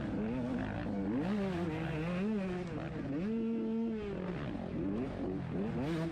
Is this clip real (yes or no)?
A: yes